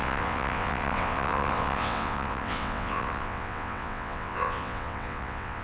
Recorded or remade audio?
remade